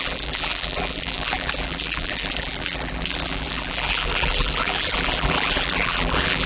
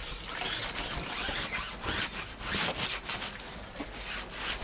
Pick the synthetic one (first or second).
first